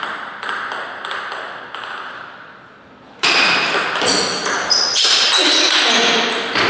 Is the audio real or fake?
real